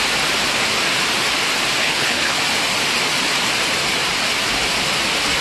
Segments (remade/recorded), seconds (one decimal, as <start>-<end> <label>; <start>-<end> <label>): 0.0-1.8 recorded; 1.8-2.4 remade; 2.4-5.4 recorded